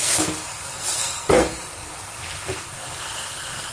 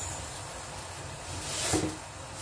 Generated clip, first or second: first